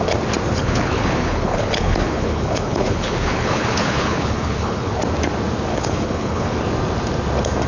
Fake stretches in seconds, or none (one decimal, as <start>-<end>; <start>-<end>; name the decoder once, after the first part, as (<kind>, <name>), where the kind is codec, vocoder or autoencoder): 0.6-5.0 (codec, HILCodec); 5.7-6.6